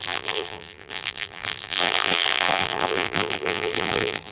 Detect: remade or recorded remade